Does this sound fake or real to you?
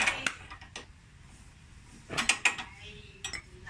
real